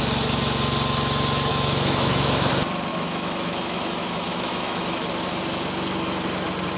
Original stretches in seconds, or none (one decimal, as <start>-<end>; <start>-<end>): 0.0-1.5; 2.5-2.9; 5.1-6.8